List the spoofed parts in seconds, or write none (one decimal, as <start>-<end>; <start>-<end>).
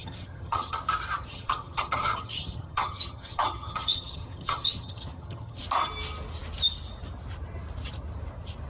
0.0-0.8; 1.3-5.6